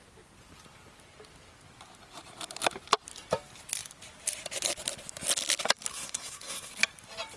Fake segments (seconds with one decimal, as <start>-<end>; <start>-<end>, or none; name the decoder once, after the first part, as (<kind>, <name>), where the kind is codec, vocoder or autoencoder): 5.9-6.7 (codec, SNAC)